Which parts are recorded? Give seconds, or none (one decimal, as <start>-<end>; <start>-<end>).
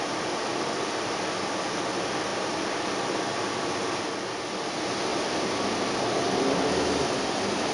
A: 0.0-7.7